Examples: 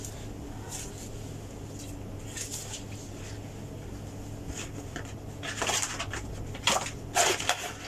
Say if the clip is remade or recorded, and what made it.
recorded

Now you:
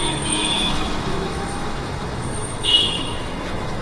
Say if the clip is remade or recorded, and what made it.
remade, autoencoder, DAC-VAE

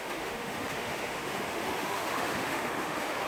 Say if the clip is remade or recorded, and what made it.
remade, autoencoder, DAC-VAE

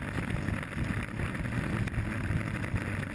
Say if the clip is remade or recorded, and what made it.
recorded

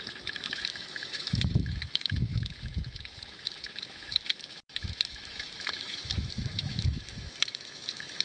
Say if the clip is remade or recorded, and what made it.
remade, autoencoder, DAC-VAE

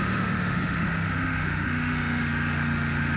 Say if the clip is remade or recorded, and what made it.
remade, autoencoder, DAC-VAE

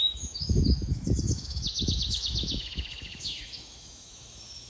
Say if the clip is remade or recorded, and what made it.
remade, autoencoder, DAC-VAE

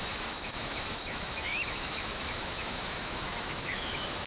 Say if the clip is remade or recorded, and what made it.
remade, autoencoder, DAC-VAE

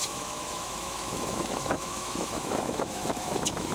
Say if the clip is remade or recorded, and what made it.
remade, autoencoder, DAC-VAE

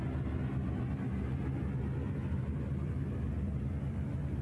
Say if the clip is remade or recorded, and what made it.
recorded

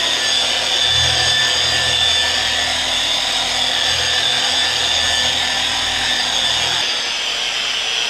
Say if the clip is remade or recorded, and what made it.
recorded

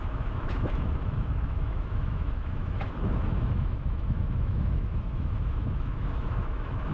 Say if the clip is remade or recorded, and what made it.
remade, autoencoder, DAC-VAE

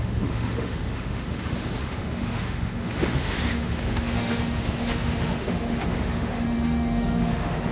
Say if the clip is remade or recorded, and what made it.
remade, autoencoder, DAC-VAE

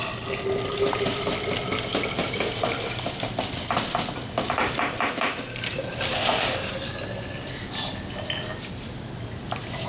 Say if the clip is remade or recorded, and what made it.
recorded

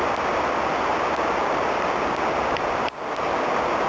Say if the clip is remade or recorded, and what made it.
recorded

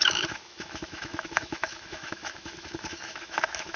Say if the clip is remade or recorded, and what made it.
remade, autoencoder, DAC-VAE